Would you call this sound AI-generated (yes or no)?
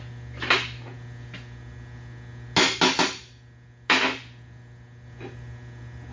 no